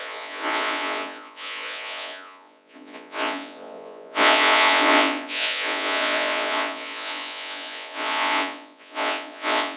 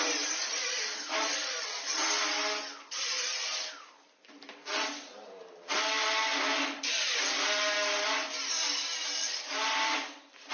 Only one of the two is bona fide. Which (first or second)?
second